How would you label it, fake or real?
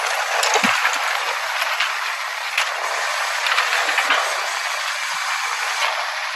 real